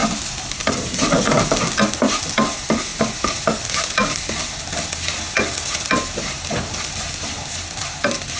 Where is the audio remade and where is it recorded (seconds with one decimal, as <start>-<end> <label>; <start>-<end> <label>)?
0.0-8.4 recorded